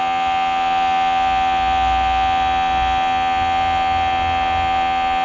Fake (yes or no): no